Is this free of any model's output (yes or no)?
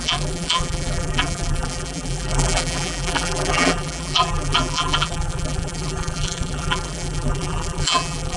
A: no